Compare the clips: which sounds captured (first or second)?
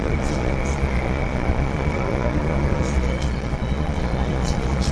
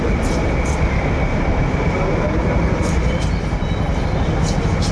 second